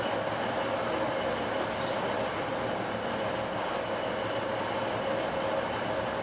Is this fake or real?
real